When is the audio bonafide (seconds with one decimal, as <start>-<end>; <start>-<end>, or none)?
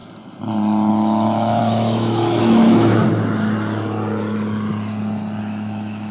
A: 0.0-0.9; 3.0-5.4